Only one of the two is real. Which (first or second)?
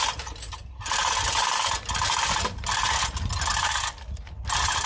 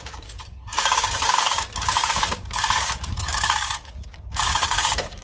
first